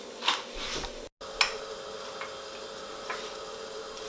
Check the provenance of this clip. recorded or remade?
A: recorded